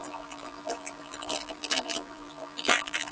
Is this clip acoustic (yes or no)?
no